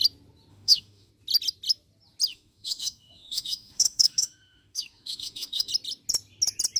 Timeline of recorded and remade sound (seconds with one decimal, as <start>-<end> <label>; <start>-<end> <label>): 0.0-0.5 recorded; 0.5-1.1 remade; 1.1-2.3 recorded; 2.3-5.7 remade; 5.7-6.8 recorded